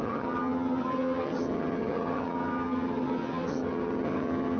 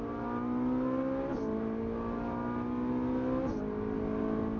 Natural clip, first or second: second